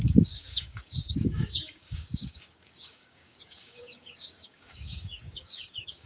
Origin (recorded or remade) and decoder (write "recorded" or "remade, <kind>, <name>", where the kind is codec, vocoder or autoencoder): remade, codec, DAC